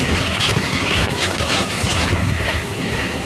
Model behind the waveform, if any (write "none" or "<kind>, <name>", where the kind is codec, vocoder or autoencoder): codec, SNAC